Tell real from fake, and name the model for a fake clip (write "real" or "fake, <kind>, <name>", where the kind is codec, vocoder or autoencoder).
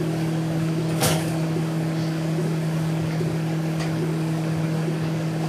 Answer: fake, codec, DAC